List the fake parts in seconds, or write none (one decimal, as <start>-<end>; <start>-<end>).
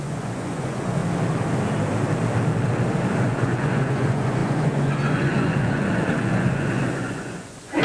0.0-1.0; 3.2-7.8